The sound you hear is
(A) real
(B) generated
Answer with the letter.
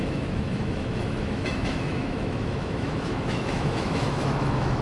B